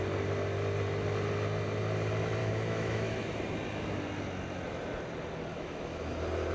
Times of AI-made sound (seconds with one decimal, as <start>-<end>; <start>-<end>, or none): 2.4-3.4; 5.5-6.1